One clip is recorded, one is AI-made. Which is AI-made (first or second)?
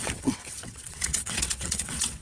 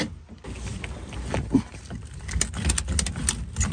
first